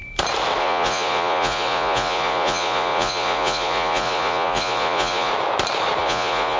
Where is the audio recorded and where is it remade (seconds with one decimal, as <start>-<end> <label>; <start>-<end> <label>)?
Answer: 0.0-0.6 recorded; 0.6-5.3 remade; 5.3-6.0 recorded; 6.0-6.6 remade